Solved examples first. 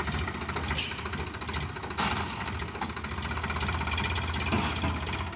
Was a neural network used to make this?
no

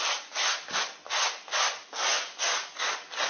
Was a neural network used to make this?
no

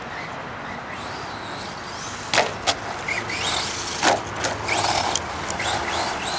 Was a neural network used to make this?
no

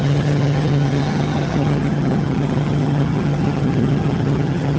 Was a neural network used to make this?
yes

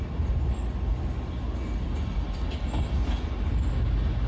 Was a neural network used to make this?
no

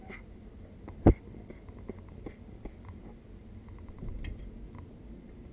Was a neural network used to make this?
no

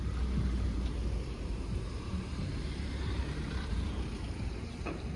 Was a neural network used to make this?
yes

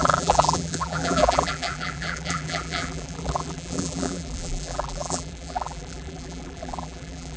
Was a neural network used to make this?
yes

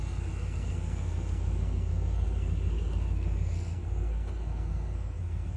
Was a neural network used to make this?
yes